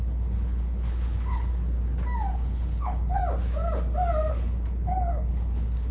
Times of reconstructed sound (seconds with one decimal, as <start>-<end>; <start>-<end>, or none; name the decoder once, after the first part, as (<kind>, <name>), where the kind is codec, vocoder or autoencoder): 0.0-1.5 (codec, HILCodec); 2.3-3.2; 4.3-5.9